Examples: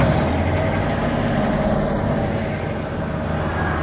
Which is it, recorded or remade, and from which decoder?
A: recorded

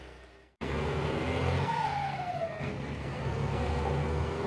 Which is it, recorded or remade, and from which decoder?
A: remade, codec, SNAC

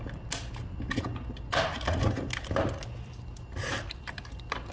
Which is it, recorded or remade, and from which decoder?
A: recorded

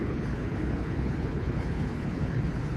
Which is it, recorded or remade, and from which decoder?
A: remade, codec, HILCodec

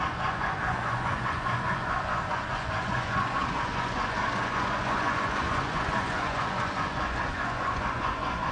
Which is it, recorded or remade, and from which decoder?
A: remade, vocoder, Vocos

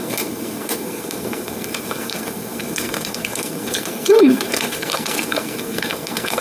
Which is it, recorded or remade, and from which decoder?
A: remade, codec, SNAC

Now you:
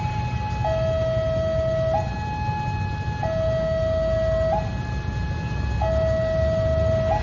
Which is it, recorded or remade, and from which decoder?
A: recorded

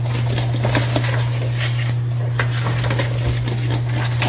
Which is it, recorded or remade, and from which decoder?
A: recorded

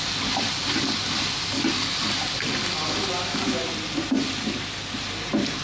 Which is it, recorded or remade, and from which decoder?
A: recorded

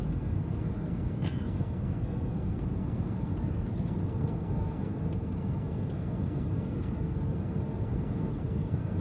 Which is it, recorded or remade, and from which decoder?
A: remade, codec, SNAC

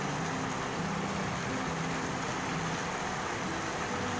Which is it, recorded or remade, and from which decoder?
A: recorded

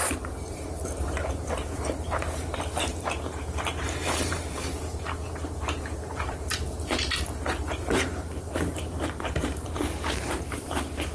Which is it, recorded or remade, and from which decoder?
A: remade, vocoder, BigVGAN v2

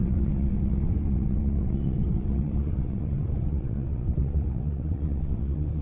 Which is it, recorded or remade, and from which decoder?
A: remade, vocoder, WaveNeXt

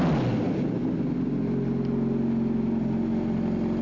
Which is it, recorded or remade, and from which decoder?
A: recorded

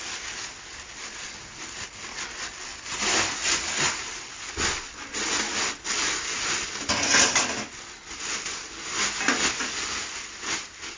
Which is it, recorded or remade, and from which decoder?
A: recorded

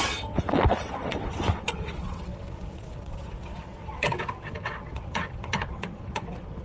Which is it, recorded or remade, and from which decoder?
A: remade, vocoder, WaveNeXt